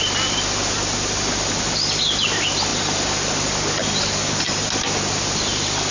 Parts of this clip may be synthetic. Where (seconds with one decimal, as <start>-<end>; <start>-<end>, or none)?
none